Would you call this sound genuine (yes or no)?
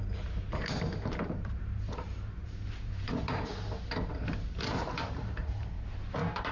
no